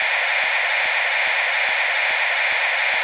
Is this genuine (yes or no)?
yes